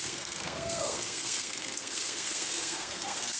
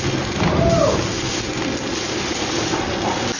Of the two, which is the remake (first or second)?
first